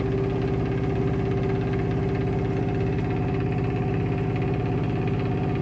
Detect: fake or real real